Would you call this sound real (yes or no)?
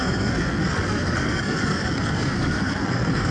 no